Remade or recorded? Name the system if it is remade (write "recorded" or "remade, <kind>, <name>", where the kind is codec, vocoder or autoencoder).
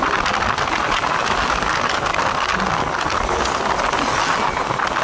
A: recorded